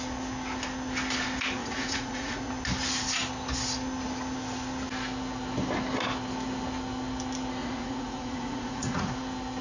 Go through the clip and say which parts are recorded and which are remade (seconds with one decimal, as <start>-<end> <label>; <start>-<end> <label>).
0.0-1.6 recorded; 1.6-2.5 remade; 2.5-7.6 recorded; 7.6-9.1 remade; 9.1-9.6 recorded